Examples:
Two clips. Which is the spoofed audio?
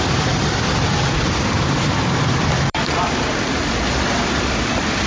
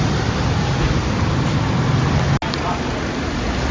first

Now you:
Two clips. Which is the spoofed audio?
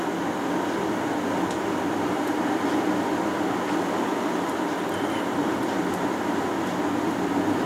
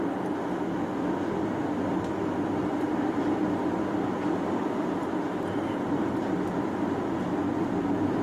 second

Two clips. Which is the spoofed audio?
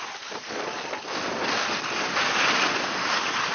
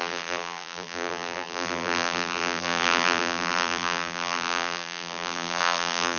second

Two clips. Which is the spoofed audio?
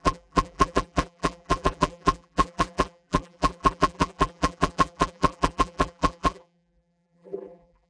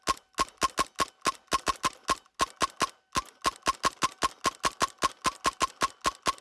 first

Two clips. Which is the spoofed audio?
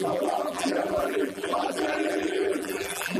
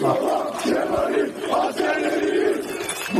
first